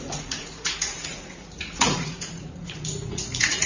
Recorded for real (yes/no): no